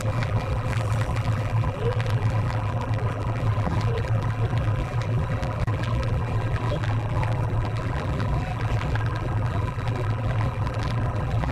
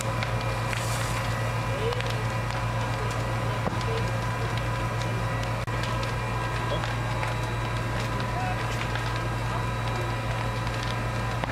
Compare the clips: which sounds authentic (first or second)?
second